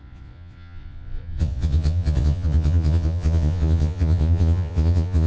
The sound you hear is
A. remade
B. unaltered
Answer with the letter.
A